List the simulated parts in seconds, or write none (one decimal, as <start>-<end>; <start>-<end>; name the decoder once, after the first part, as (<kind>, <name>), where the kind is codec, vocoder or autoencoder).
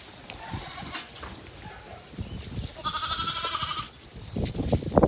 0.6-1.2 (vocoder, Vocos)